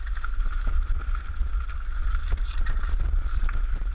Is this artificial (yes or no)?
no